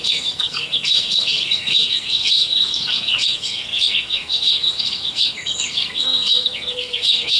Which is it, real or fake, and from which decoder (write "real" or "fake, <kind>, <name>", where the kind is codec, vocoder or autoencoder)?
fake, codec, SNAC